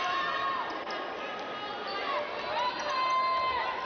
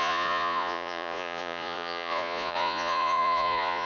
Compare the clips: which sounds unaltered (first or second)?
first